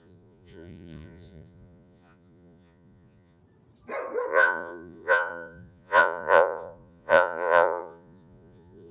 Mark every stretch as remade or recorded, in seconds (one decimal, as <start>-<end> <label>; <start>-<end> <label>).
0.0-3.4 remade; 3.4-4.3 recorded; 4.3-8.9 remade